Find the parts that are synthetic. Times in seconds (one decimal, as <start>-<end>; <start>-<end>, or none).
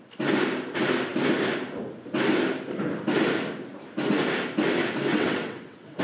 5.1-6.0